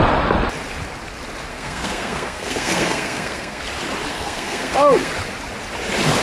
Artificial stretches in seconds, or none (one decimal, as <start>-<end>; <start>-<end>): 1.5-3.6; 4.1-5.1